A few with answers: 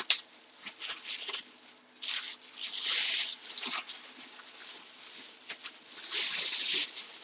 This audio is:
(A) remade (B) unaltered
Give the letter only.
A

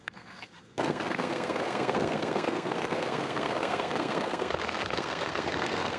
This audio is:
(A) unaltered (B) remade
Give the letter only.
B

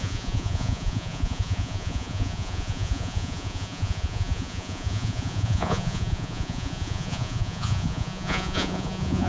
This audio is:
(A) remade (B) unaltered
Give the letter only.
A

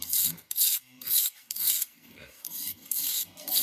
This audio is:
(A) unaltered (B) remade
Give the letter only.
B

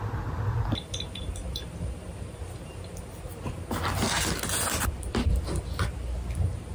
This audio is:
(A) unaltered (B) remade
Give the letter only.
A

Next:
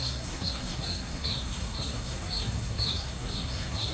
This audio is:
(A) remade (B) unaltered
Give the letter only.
A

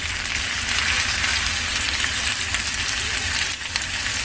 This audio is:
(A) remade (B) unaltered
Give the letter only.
B